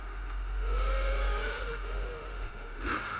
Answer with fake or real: fake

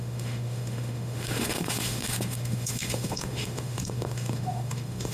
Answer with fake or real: fake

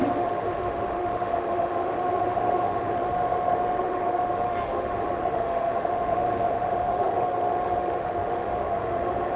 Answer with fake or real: fake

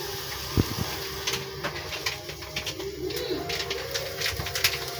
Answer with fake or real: real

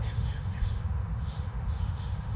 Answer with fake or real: fake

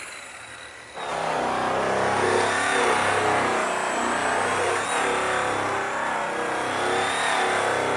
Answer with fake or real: real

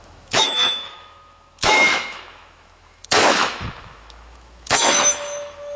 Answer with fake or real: fake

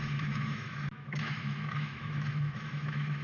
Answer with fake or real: fake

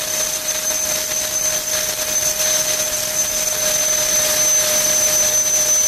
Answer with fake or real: real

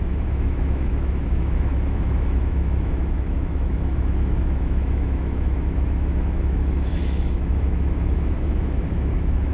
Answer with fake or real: fake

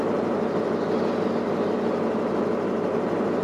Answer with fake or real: real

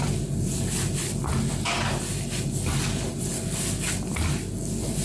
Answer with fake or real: real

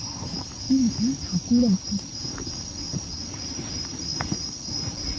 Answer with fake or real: real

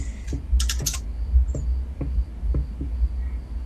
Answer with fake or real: real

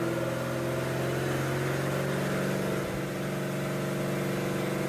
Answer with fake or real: real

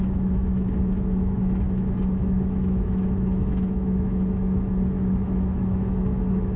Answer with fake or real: fake